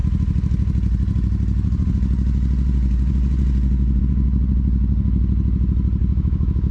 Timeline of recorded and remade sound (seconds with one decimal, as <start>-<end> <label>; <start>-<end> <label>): 0.0-6.0 recorded; 6.0-6.7 remade